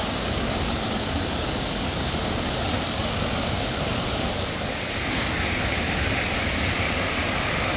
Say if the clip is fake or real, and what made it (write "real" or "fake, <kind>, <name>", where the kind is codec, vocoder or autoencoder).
fake, codec, DAC